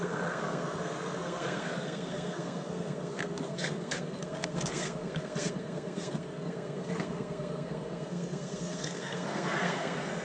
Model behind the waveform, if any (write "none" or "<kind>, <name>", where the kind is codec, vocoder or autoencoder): codec, SNAC